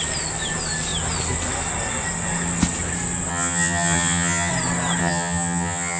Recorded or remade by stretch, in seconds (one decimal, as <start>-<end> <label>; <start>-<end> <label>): 0.0-3.3 recorded; 3.3-4.5 remade; 4.5-5.0 recorded; 5.0-6.0 remade